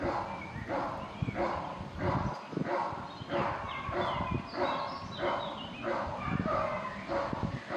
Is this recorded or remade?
recorded